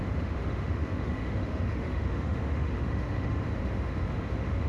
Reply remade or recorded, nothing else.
remade